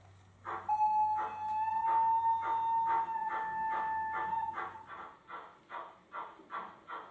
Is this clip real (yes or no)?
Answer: yes